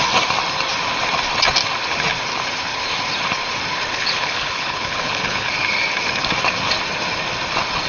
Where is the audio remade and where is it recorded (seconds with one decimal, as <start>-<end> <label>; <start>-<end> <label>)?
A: 0.0-3.9 recorded; 3.9-5.5 remade; 5.5-7.9 recorded